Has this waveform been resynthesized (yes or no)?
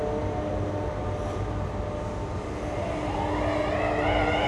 no